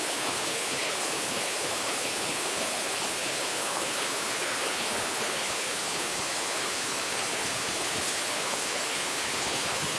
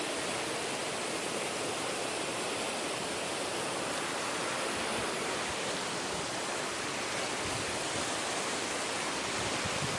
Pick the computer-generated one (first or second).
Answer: first